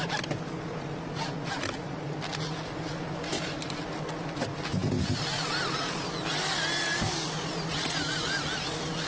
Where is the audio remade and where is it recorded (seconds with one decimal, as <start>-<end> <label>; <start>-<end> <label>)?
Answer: 0.0-9.1 recorded